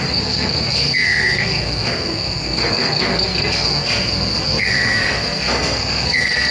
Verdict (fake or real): fake